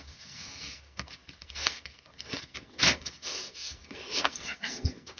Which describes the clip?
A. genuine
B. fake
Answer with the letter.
B